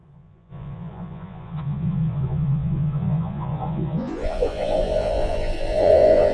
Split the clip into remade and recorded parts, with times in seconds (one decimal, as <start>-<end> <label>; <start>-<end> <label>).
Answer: 0.0-6.3 remade